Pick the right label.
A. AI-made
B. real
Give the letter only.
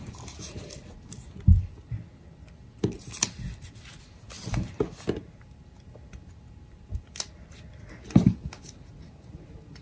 B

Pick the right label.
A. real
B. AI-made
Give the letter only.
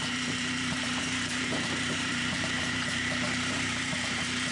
B